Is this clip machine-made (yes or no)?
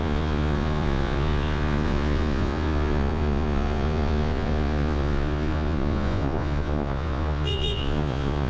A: yes